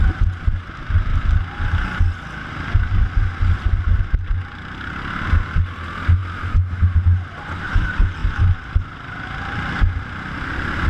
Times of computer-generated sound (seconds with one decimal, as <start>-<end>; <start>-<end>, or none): none